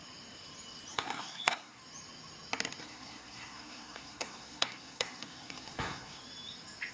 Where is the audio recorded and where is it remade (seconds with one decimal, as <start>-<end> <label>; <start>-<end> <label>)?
0.0-0.9 recorded; 0.9-1.8 remade; 1.8-2.8 recorded; 2.8-6.2 remade; 6.2-6.9 recorded